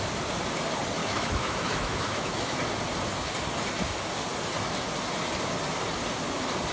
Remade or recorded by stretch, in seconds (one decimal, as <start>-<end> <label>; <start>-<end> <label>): 0.0-1.0 recorded; 1.0-2.6 remade; 2.6-6.7 recorded